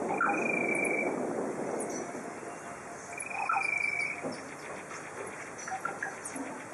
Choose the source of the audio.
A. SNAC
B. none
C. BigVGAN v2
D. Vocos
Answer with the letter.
B